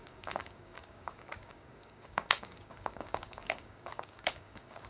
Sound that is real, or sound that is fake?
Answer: fake